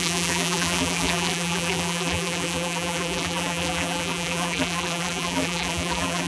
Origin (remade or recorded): remade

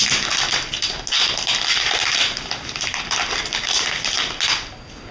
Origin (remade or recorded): recorded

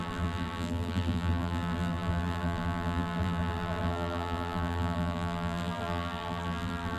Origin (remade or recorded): remade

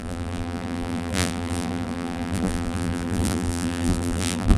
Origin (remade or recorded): remade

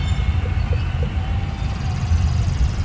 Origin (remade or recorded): remade